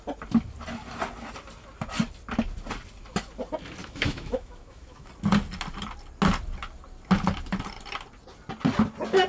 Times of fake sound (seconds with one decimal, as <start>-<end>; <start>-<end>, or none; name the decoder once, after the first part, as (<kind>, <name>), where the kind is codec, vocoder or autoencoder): 3.8-5.1 (autoencoder, DAC-VAE)